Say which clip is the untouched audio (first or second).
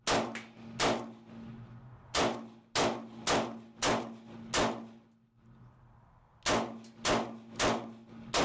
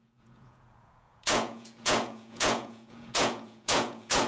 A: first